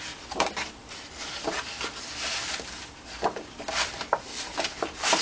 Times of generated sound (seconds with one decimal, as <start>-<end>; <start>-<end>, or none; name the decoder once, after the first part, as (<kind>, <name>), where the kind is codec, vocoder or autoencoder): 0.0-5.2 (vocoder, BigVGAN v2)